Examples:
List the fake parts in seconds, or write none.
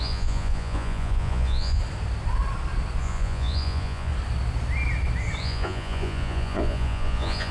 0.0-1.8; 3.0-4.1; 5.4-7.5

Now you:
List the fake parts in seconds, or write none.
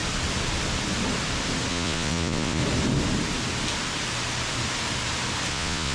1.7-2.6; 5.5-5.9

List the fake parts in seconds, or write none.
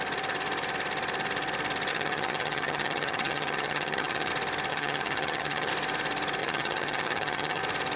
1.9-4.3; 4.7-5.7; 6.4-7.6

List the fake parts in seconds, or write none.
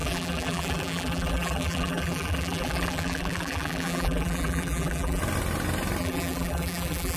0.0-5.2; 6.0-7.2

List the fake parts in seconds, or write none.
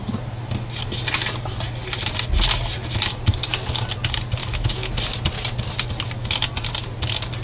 4.4-5.0